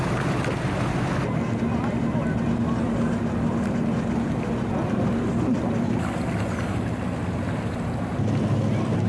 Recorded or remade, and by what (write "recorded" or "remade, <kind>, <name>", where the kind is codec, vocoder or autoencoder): recorded